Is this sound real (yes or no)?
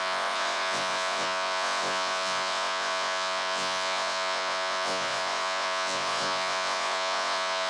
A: no